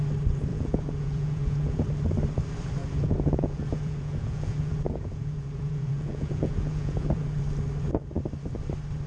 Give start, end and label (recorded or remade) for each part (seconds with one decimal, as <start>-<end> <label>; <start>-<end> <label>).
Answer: 0.0-0.5 recorded; 0.5-1.8 remade; 1.8-2.8 recorded; 2.8-7.4 remade; 7.4-9.1 recorded